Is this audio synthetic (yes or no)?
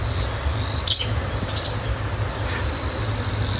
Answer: no